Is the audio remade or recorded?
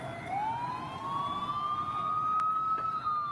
recorded